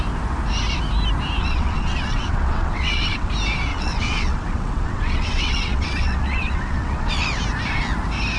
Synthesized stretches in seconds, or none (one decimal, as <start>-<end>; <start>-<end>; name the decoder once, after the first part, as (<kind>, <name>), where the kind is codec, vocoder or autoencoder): 1.4-3.3 (vocoder, WaveNeXt); 3.7-7.2